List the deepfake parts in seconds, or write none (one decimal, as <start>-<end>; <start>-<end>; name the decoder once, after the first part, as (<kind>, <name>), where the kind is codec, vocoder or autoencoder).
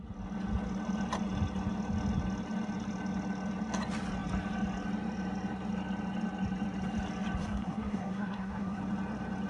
7.4-8.8 (codec, SNAC)